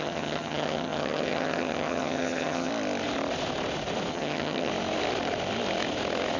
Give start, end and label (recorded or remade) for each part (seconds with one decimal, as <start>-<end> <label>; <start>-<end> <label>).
0.0-2.7 remade; 2.7-4.1 recorded; 4.1-4.7 remade; 4.7-6.4 recorded